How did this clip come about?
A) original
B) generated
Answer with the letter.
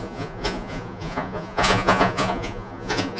B